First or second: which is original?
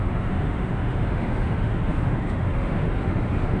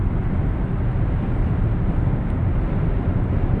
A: second